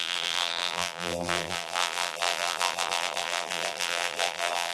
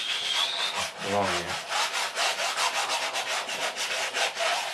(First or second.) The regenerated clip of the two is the first